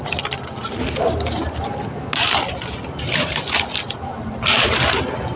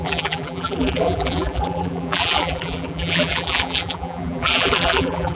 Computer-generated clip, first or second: second